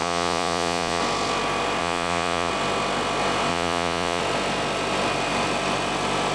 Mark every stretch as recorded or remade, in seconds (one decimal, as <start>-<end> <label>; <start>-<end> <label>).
0.0-1.0 remade; 1.0-1.8 recorded; 1.8-2.5 remade; 2.5-3.5 recorded; 3.5-4.2 remade; 4.2-6.3 recorded

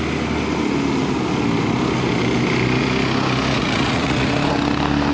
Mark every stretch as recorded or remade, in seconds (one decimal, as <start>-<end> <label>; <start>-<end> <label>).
0.0-3.6 recorded; 3.6-4.3 remade; 4.3-5.1 recorded

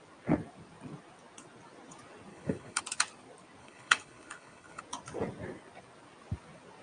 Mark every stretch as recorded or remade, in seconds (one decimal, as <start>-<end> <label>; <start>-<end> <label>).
0.0-2.3 recorded; 2.3-2.8 remade; 2.8-3.6 recorded; 3.6-4.8 remade; 4.8-6.8 recorded

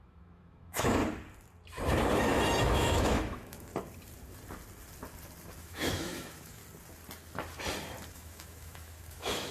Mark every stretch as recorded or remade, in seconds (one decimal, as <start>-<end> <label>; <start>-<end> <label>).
0.0-1.0 remade; 1.0-2.6 recorded; 2.6-3.7 remade; 3.7-5.6 recorded; 5.6-6.6 remade; 6.6-8.1 recorded; 8.1-9.5 remade

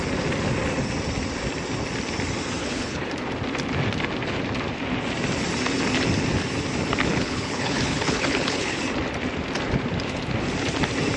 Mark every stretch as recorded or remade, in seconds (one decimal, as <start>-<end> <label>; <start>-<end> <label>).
0.0-2.6 recorded; 2.6-3.1 remade; 3.1-7.1 recorded; 7.1-8.8 remade; 8.8-11.2 recorded

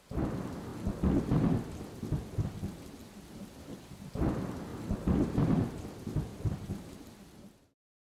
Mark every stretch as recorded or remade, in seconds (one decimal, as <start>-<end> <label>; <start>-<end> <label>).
0.0-3.0 recorded; 3.0-4.1 remade; 4.1-4.7 recorded; 4.7-5.8 remade; 5.8-6.3 recorded; 6.3-7.2 remade; 7.2-8.1 recorded

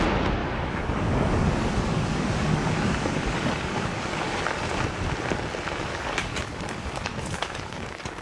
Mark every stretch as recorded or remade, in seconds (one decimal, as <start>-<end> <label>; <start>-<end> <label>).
0.0-0.4 recorded; 0.4-4.4 remade; 4.4-5.9 recorded; 5.9-8.2 remade